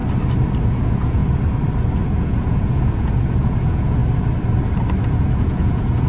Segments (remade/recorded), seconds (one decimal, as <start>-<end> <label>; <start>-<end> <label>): 0.0-0.6 recorded; 0.6-1.2 remade; 1.2-2.2 recorded; 2.2-4.0 remade; 4.0-5.0 recorded; 5.0-6.1 remade